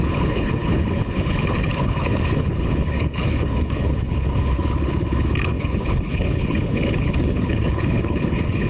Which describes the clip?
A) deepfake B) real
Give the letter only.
A